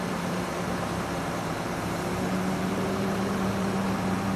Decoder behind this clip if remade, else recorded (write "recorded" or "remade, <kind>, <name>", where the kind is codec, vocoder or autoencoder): remade, vocoder, BigVGAN v2